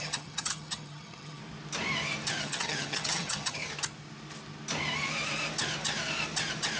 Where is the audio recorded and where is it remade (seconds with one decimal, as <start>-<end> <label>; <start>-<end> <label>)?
0.0-1.4 remade; 1.4-2.4 recorded; 2.4-3.6 remade; 3.6-6.8 recorded